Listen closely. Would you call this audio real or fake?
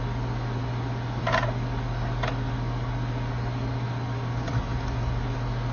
real